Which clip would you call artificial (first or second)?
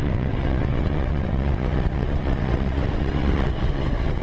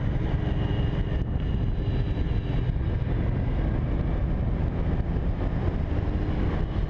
first